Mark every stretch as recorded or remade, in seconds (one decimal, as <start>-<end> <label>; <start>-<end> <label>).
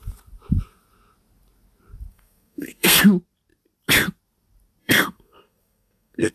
0.0-2.1 recorded; 2.1-3.0 remade; 3.0-4.8 recorded; 4.8-6.3 remade